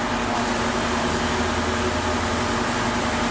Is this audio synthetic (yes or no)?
no